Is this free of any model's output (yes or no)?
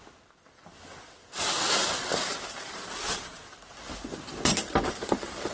yes